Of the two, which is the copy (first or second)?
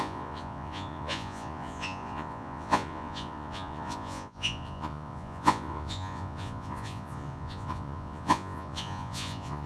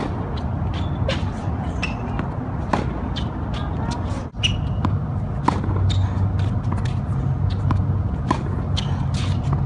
first